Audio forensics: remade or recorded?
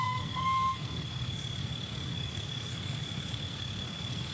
remade